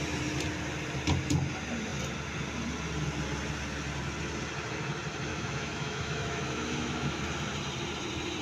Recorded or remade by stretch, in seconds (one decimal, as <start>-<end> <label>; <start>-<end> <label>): 0.0-5.3 recorded; 5.3-7.2 remade; 7.2-8.4 recorded